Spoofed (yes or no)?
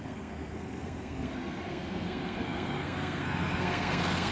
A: yes